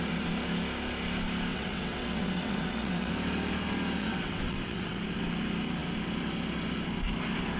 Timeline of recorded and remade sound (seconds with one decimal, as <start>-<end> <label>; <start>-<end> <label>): 0.0-1.5 recorded; 1.5-3.1 remade; 3.1-4.0 recorded; 4.0-5.0 remade; 5.0-7.6 recorded